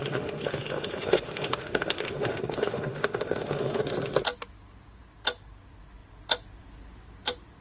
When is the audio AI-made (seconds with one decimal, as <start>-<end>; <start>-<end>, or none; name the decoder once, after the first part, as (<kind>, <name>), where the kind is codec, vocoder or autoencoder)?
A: 0.0-3.8 (autoencoder, DAC-VAE)